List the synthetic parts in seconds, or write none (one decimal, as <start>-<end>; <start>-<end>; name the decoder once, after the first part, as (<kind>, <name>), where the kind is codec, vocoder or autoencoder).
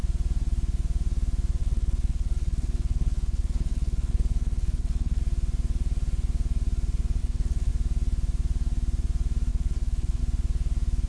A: 1.6-5.2 (codec, HILCodec); 7.2-7.7; 9.5-10.2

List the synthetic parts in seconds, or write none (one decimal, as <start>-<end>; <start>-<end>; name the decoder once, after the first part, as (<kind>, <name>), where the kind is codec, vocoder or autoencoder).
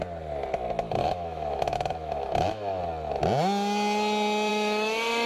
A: 1.0-2.8 (autoencoder, DAC-VAE); 4.5-5.3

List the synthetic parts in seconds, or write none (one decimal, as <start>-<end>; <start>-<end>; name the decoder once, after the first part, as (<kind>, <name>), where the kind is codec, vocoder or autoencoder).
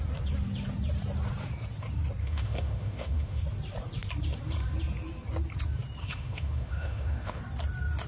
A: 2.2-3.4 (autoencoder, DAC-VAE); 6.0-7.4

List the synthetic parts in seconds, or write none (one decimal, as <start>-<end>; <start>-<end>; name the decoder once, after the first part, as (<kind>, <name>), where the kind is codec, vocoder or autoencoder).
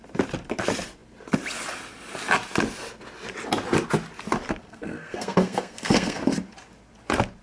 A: 4.6-6.2 (codec, SNAC)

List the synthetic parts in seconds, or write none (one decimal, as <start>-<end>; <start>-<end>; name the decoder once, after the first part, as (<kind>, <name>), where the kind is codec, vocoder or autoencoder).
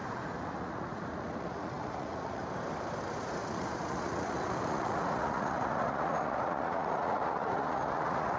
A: 0.0-2.4 (vocoder, Vocos); 3.1-8.4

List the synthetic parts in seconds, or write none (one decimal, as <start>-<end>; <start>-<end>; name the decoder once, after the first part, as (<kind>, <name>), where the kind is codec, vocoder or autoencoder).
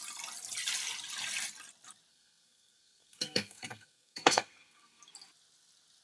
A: 2.1-5.0 (codec, SNAC)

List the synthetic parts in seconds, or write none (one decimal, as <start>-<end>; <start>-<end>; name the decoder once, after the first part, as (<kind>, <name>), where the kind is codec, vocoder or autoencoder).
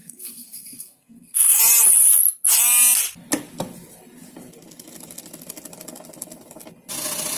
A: 0.0-1.6 (codec, SNAC)